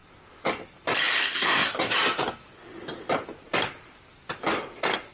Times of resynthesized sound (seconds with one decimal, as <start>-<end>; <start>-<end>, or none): 1.2-1.7